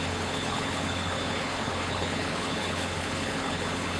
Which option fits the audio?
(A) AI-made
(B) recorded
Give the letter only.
A